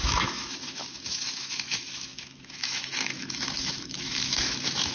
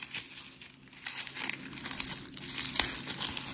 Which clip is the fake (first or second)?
first